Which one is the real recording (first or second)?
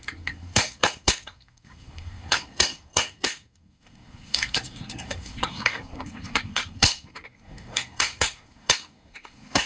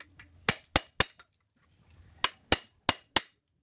second